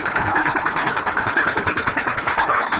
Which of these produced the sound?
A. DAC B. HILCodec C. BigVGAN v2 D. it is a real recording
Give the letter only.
B